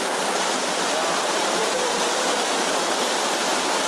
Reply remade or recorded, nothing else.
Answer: recorded